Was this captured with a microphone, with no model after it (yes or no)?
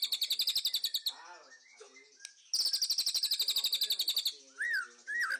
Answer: yes